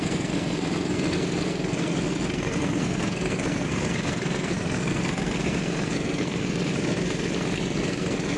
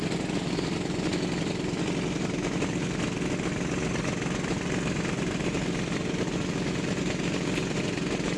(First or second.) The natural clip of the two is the second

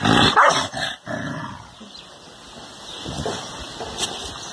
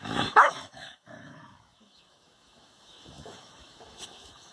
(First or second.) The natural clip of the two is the first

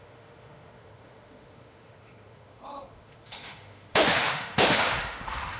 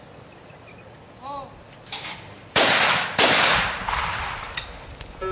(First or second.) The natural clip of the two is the second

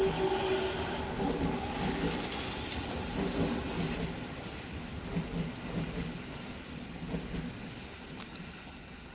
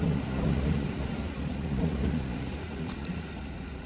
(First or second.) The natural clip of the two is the first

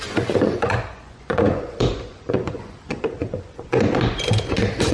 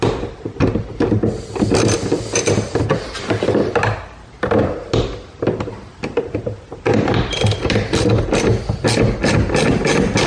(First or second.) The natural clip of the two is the second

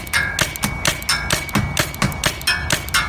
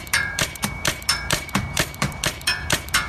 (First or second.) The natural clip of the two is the first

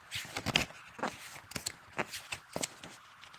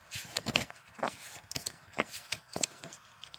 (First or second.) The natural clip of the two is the first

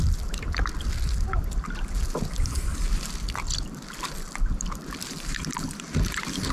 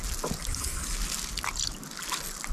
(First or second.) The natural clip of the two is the second